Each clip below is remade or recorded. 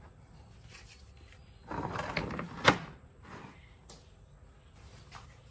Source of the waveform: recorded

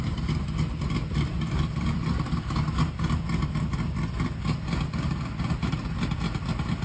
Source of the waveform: recorded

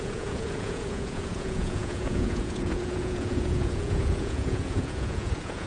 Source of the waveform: remade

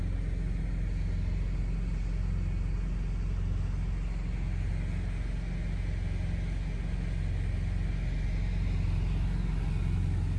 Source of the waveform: recorded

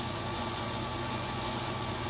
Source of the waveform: remade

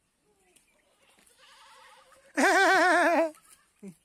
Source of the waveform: recorded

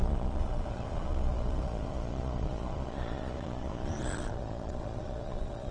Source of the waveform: remade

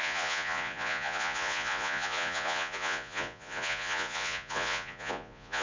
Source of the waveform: remade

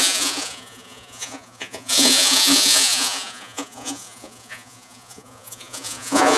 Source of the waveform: remade